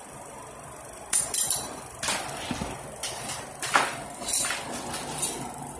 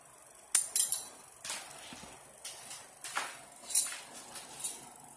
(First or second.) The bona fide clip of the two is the second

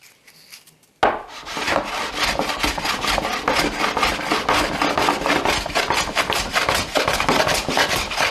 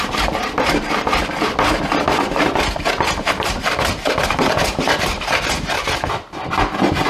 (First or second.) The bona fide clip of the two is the first